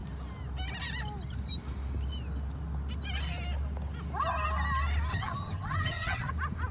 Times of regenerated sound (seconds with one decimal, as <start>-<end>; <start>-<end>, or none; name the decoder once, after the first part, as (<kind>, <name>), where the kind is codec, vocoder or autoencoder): 5.1-6.3 (vocoder, HiFi-GAN)